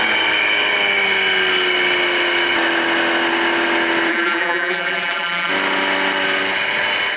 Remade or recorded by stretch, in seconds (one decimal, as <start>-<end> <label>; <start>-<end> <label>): 0.0-4.1 recorded; 4.1-5.5 remade; 5.5-7.2 recorded